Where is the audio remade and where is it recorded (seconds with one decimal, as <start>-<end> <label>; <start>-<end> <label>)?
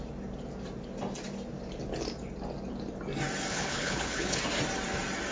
0.0-3.5 recorded; 3.5-4.4 remade; 4.4-5.3 recorded